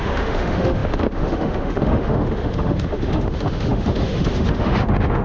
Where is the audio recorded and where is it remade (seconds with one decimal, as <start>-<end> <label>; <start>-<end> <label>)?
0.0-5.2 remade